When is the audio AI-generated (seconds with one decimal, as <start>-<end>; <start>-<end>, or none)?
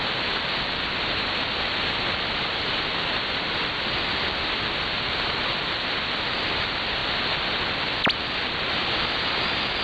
none